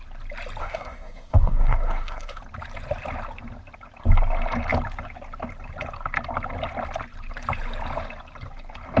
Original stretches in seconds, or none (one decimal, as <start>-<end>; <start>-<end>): 0.0-0.6; 2.4-9.0